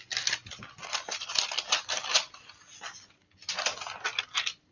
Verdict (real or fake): real